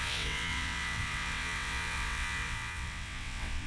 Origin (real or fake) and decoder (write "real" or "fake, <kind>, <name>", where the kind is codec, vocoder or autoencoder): fake, vocoder, WaveNeXt